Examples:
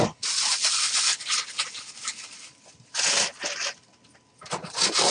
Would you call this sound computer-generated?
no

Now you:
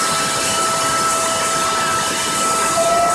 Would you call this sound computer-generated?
no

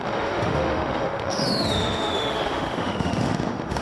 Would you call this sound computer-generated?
yes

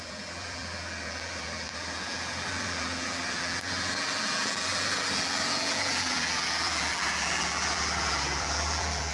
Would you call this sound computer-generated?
yes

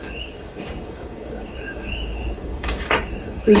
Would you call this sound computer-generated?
yes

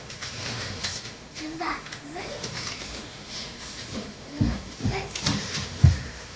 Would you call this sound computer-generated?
yes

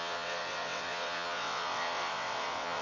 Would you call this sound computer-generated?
yes